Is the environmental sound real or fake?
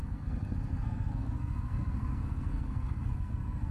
fake